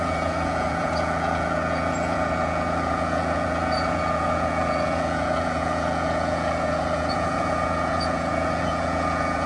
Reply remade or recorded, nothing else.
remade